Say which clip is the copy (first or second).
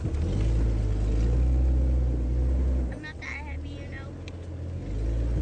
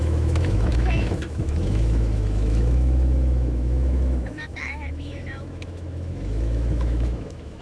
second